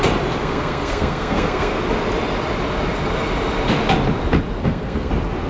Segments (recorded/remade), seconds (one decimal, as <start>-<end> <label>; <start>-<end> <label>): 0.0-0.4 recorded; 0.4-1.8 remade; 1.8-4.6 recorded; 4.6-5.1 remade; 5.1-5.5 recorded